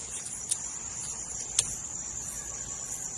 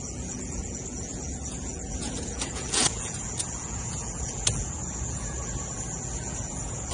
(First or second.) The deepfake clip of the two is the second